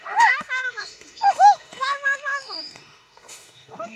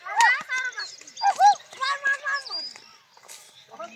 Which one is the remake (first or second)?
first